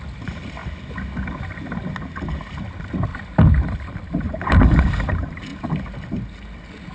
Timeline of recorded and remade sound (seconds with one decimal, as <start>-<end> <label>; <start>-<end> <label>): 0.0-0.6 remade; 0.6-2.6 recorded; 2.6-5.5 remade; 5.5-6.9 recorded